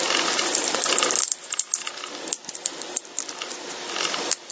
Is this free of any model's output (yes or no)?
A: yes